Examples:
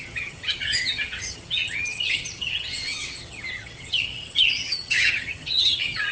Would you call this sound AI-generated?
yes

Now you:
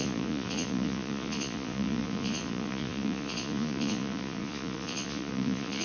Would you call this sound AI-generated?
yes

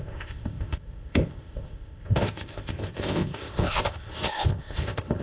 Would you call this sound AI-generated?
yes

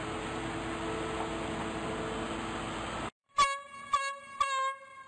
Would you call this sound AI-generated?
no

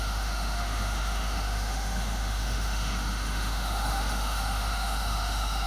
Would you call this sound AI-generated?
yes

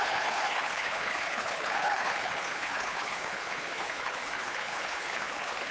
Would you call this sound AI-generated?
yes